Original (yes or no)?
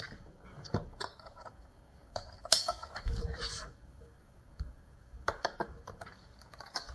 no